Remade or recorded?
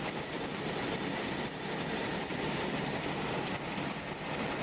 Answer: remade